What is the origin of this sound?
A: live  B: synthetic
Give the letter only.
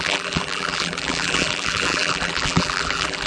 B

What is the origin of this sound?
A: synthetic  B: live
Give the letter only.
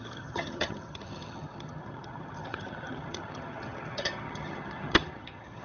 A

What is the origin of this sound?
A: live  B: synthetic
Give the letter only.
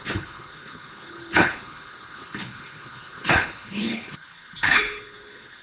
B